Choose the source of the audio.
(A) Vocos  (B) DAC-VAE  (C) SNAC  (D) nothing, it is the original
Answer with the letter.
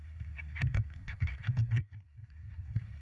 C